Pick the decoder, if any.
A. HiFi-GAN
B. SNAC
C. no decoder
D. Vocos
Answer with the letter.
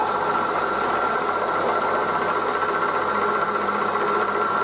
C